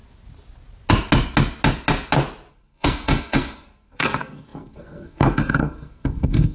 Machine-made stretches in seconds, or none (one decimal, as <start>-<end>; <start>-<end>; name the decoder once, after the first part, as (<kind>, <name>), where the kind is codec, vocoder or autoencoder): 2.5-6.5 (codec, SNAC)